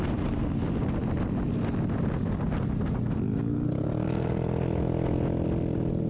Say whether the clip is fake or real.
real